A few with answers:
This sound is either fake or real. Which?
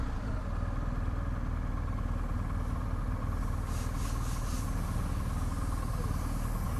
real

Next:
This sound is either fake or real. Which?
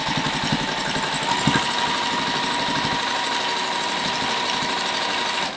real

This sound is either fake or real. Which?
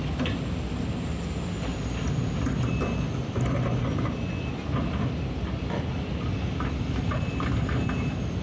real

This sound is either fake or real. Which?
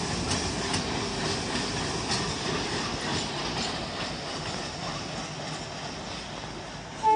real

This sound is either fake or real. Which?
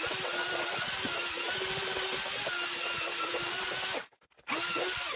real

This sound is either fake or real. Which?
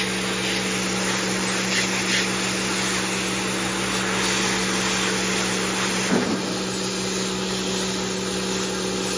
real